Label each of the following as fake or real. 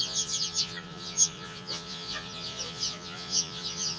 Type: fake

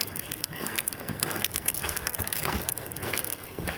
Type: fake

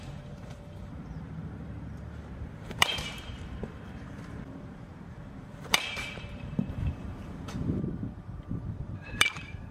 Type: fake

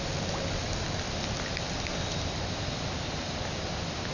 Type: real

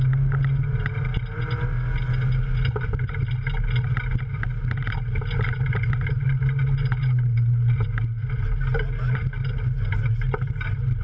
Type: real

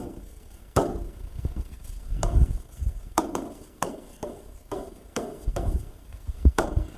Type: fake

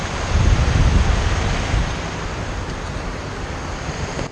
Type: real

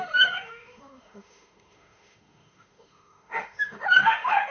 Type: fake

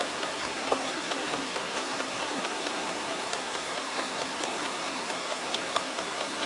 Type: fake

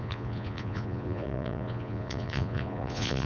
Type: fake